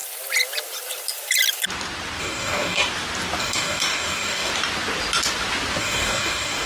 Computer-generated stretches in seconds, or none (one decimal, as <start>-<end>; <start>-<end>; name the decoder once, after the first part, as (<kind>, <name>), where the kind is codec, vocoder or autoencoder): 2.2-2.8 (codec, DAC); 3.4-4.5; 5.8-6.7